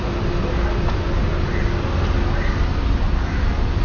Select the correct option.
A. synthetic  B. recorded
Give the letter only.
B